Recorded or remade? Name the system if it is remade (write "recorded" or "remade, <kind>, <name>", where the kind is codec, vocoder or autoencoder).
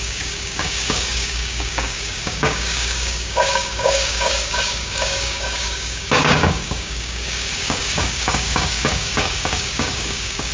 remade, codec, DAC